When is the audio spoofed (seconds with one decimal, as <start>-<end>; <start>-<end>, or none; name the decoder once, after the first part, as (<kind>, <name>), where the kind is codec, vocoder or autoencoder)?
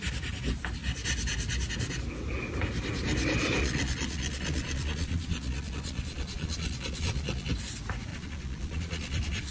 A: 3.6-7.5 (vocoder, Vocos); 8.1-9.5